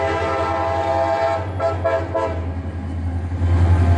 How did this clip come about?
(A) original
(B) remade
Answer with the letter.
A